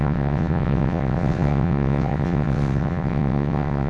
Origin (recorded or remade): remade